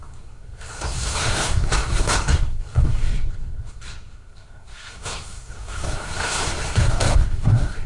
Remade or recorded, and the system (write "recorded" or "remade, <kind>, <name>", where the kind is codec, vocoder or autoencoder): remade, codec, SNAC